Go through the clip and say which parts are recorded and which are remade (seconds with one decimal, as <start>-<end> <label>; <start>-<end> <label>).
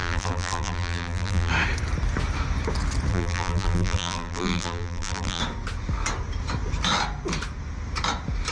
0.0-1.5 remade; 1.5-3.1 recorded; 3.1-5.4 remade; 5.4-8.5 recorded